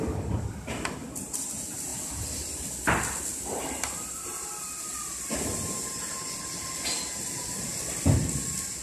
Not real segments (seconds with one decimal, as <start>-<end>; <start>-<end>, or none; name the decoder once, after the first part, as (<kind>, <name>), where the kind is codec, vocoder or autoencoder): none